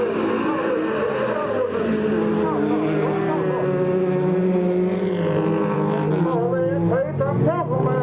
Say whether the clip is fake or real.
real